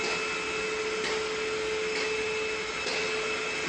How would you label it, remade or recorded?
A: recorded